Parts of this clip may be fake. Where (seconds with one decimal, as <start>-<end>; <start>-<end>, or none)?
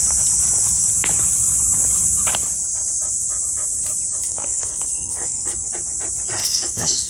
4.2-5.7; 6.4-7.1